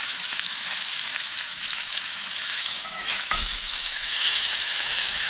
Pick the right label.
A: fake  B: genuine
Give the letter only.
A